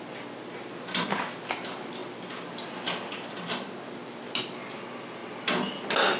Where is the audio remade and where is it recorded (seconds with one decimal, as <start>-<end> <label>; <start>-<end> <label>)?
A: 0.0-6.2 recorded